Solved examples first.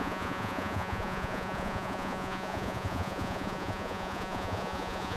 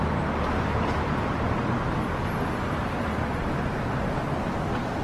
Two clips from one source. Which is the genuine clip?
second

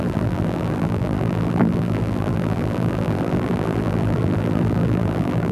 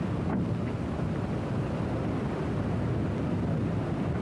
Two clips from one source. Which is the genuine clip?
second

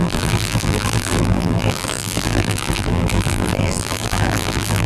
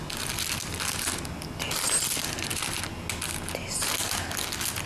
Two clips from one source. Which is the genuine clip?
second